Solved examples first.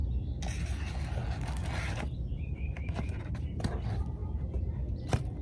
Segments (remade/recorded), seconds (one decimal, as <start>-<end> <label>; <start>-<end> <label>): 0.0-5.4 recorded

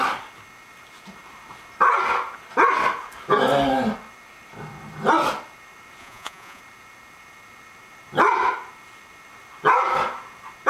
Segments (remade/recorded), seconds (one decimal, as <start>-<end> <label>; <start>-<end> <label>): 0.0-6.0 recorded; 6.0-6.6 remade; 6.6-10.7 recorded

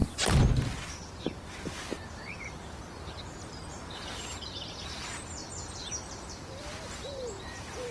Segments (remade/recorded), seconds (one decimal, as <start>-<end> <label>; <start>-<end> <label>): 0.0-0.9 recorded; 0.9-7.9 remade